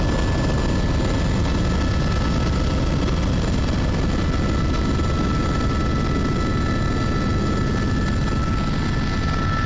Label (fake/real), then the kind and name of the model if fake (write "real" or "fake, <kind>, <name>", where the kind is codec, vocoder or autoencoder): real